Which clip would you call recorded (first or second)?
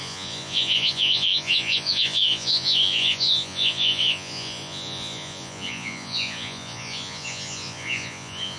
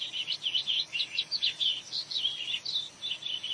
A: second